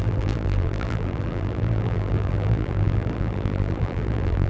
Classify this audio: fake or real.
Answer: fake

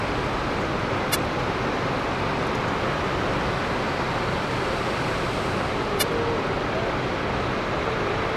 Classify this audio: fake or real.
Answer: real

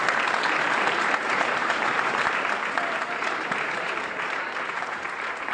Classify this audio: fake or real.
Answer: fake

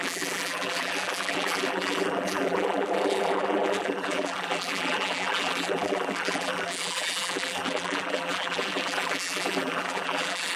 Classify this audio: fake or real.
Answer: fake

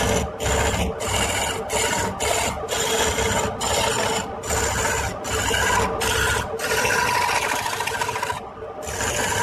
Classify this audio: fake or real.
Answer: real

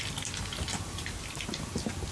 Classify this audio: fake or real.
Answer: fake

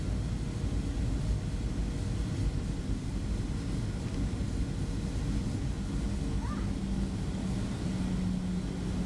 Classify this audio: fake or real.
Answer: real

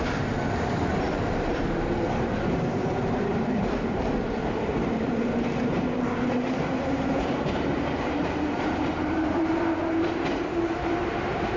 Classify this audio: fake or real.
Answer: fake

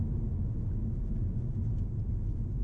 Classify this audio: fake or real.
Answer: real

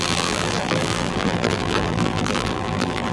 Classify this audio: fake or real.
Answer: fake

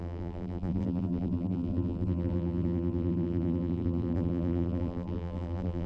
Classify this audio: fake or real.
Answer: fake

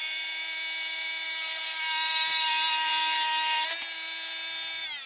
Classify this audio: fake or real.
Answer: fake